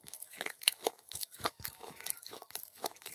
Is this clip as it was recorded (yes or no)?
no